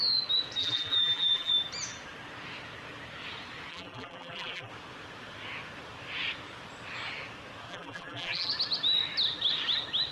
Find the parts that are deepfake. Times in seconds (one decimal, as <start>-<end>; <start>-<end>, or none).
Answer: 0.6-1.5; 3.7-4.7; 7.7-8.5